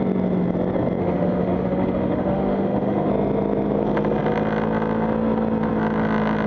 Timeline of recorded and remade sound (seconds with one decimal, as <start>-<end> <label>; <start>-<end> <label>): 0.0-1.0 recorded; 1.0-3.1 remade; 3.1-6.5 recorded